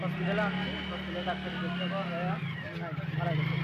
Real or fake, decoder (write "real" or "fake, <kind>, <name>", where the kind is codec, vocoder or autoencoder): real